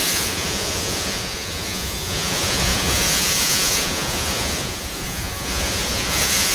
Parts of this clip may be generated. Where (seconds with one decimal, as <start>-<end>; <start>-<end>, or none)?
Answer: 0.0-6.5